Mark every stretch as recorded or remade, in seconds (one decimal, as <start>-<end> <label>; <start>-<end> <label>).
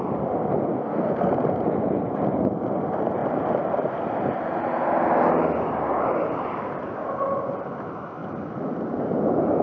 0.0-0.7 recorded; 0.7-1.3 remade; 1.3-9.6 recorded